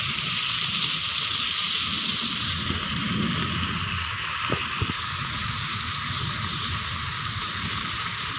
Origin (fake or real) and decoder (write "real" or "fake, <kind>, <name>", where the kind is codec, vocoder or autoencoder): fake, vocoder, BigVGAN v2